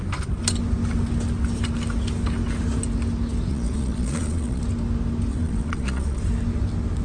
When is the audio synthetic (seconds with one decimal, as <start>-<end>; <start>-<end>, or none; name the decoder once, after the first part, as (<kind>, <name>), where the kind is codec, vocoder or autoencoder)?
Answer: 3.5-4.6 (vocoder, Vocos); 5.3-6.2